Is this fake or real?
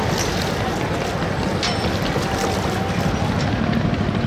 real